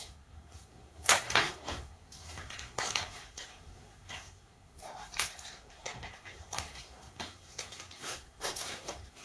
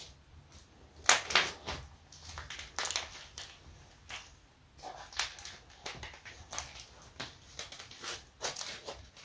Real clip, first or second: second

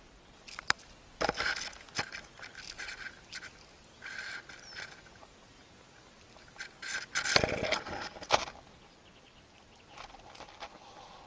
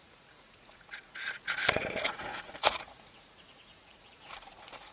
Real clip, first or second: first